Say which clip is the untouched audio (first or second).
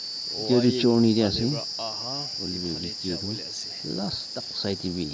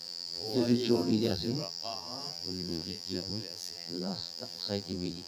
first